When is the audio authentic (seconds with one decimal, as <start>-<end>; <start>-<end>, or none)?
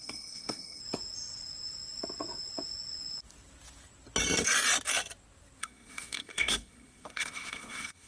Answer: 0.8-5.6